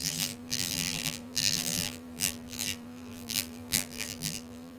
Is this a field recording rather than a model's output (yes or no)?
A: no